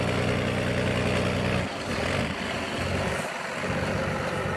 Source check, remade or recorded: recorded